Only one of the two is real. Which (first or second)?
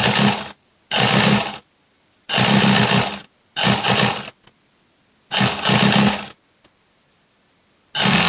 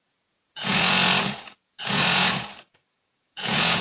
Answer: first